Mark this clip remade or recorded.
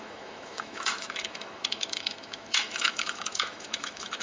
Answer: remade